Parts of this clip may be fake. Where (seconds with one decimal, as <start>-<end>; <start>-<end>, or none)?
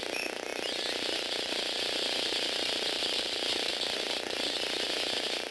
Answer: none